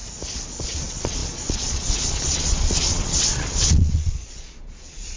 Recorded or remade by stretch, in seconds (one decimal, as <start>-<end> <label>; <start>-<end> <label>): 0.0-0.5 recorded; 0.5-5.2 remade